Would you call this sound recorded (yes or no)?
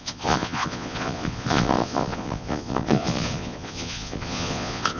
no